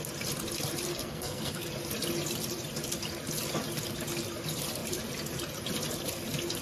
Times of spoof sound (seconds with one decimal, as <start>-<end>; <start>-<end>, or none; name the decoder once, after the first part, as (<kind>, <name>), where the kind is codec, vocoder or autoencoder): 0.9-1.7 (codec, SNAC)